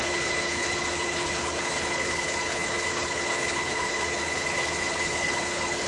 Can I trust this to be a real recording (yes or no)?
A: no